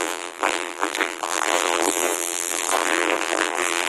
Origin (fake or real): fake